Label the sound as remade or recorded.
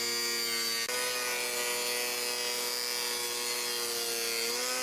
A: recorded